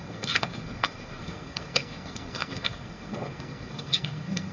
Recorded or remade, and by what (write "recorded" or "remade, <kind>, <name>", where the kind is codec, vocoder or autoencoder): remade, codec, SNAC